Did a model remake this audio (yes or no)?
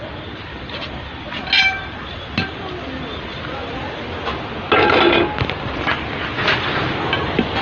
no